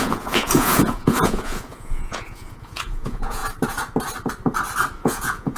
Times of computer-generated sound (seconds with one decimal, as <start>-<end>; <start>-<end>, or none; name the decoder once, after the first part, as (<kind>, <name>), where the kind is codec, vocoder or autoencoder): 0.0-3.4 (vocoder, Vocos); 5.0-5.6